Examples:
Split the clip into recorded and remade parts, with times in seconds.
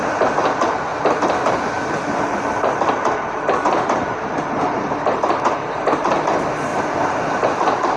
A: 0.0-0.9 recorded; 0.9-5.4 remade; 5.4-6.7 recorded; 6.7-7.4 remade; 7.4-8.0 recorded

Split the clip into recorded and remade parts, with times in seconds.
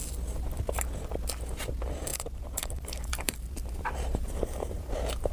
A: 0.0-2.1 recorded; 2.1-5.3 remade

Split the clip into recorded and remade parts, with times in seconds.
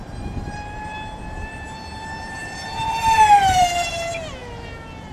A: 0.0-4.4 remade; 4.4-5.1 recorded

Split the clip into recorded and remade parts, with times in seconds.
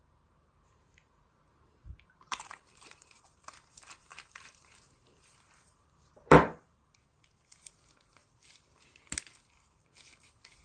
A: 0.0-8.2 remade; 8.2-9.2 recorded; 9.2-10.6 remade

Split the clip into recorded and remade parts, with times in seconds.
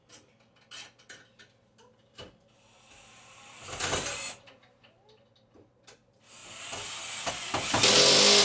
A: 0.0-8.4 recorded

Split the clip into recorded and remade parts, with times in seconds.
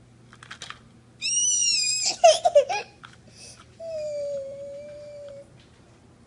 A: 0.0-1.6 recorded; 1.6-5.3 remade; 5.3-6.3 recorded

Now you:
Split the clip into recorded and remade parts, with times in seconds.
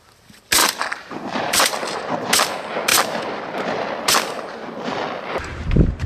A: 0.0-0.6 recorded; 0.6-2.3 remade; 2.3-6.1 recorded